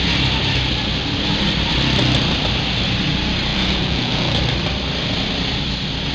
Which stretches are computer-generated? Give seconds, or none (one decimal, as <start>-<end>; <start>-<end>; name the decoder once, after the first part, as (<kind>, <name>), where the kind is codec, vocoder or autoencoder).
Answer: 3.5-4.4 (vocoder, Vocos)